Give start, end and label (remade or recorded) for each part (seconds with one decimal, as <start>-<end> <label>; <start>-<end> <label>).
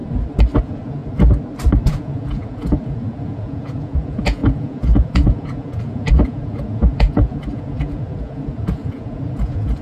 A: 0.0-0.6 recorded; 0.6-1.0 remade; 1.0-1.9 recorded; 1.9-9.8 remade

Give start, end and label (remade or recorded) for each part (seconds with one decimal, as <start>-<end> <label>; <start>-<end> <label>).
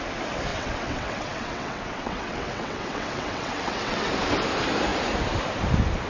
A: 0.0-0.5 recorded; 0.5-4.1 remade; 4.1-6.1 recorded